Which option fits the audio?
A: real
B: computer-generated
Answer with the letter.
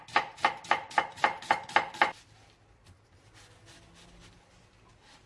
A